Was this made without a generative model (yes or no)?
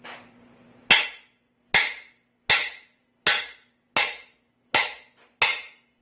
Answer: yes